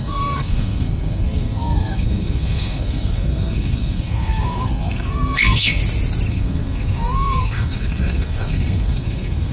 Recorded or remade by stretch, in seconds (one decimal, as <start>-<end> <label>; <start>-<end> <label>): 0.0-5.8 remade; 5.8-6.3 recorded; 6.3-9.5 remade